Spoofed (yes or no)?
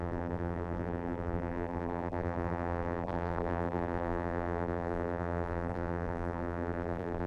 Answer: yes